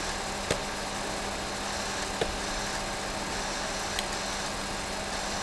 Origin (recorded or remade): recorded